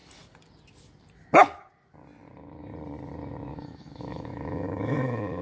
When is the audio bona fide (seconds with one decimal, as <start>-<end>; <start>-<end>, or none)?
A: 0.0-3.5